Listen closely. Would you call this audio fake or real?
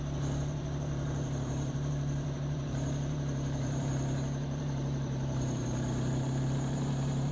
fake